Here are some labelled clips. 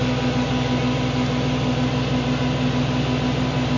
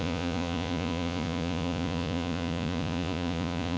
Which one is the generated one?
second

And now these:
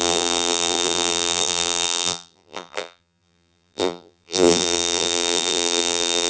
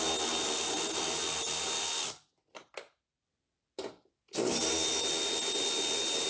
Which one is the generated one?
first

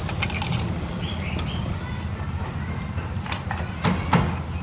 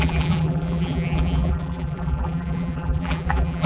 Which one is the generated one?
second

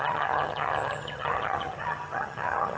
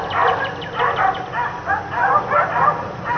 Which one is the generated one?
first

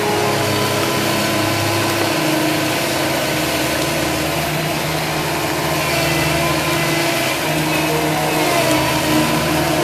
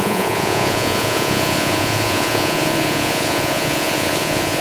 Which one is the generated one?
second